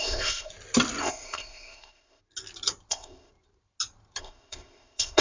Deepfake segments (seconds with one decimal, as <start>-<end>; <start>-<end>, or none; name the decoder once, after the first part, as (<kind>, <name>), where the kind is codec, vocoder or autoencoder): 0.0-0.5 (codec, ZipCodec); 1.0-2.2; 2.9-3.3; 4.2-5.2